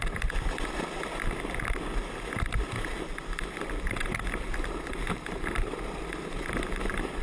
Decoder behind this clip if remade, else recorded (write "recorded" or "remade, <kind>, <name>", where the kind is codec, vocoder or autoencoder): recorded